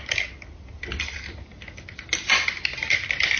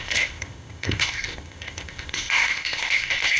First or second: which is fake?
second